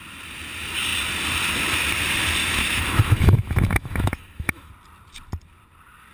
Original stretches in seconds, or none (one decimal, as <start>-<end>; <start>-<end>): 0.0-2.4; 4.7-6.1